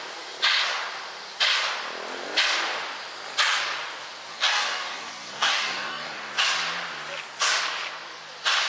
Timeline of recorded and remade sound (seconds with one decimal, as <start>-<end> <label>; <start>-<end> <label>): 0.0-4.3 recorded; 4.3-6.3 remade; 6.3-8.7 recorded